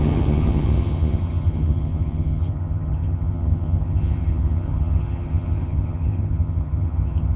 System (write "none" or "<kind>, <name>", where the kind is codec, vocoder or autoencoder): vocoder, HiFi-GAN